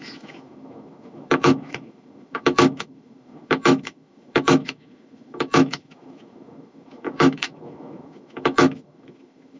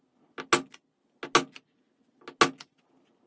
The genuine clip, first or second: second